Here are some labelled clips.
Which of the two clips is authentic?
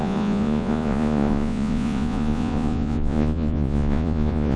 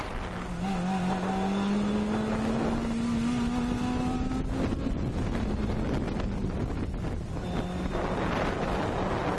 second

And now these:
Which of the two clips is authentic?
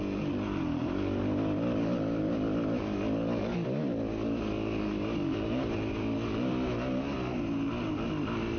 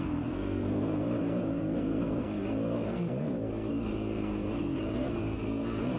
first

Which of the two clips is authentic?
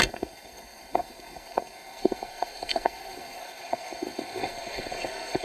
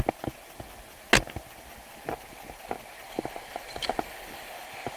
second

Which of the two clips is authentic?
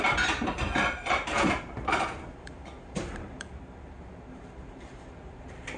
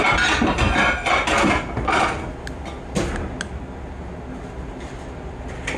second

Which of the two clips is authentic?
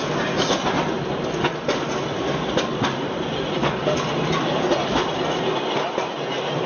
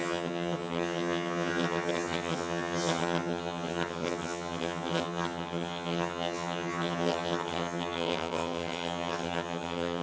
first